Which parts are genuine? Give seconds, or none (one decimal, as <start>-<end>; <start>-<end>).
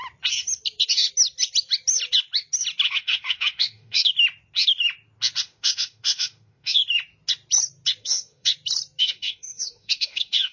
0.0-2.9; 4.1-5.4; 6.8-8.0; 8.5-9.0